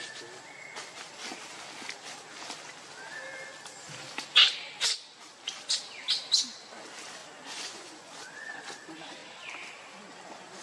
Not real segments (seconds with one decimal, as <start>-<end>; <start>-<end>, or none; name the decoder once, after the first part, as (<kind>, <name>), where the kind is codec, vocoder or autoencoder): 7.2-8.6 (vocoder, Vocos)